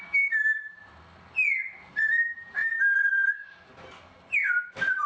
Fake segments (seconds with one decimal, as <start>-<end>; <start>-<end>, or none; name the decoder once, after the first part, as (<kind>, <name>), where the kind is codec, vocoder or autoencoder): 4.4-5.1 (vocoder, BigVGAN v2)